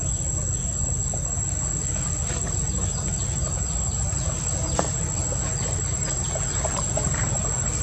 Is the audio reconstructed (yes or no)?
no